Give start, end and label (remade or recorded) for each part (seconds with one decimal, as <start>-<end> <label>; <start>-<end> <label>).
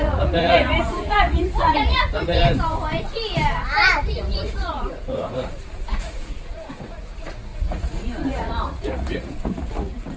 0.0-2.4 remade; 2.4-4.0 recorded; 4.0-10.2 remade